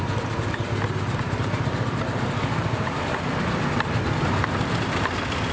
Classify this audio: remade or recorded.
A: recorded